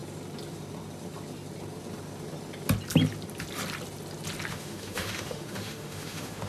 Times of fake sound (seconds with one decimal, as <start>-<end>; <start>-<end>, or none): 4.5-6.5